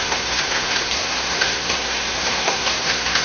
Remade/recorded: remade